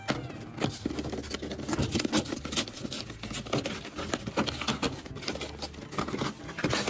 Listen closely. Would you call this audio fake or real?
real